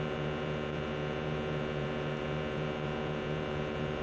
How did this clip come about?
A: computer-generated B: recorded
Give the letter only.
A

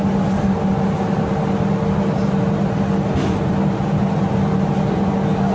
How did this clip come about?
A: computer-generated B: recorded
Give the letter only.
B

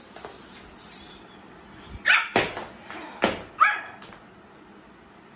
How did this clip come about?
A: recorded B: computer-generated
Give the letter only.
A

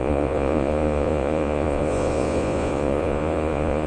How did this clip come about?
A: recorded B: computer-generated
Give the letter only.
B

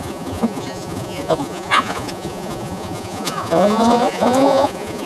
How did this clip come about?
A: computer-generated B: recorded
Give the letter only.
A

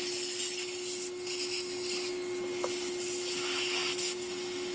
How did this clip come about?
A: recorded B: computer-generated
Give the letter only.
A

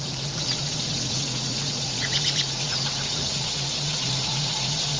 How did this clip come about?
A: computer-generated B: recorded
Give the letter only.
A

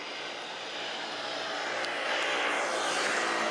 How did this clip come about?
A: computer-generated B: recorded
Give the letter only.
B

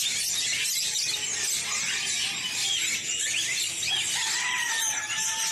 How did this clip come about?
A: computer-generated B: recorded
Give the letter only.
B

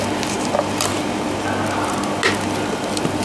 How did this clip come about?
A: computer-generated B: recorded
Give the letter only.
B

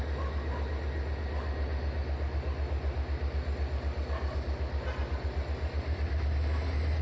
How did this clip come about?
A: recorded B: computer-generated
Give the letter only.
A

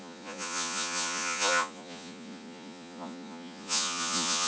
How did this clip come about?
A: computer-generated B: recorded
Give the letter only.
A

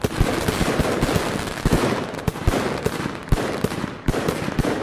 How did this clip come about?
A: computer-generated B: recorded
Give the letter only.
B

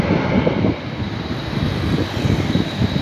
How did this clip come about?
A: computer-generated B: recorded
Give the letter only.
B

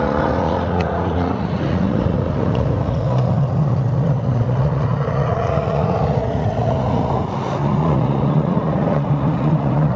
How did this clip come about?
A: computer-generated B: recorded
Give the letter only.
A